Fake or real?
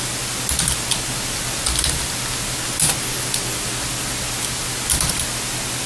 real